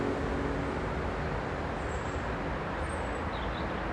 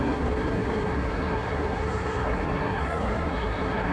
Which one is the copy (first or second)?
second